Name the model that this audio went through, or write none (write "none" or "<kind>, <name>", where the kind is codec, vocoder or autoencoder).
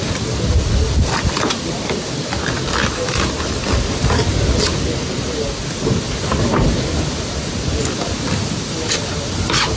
none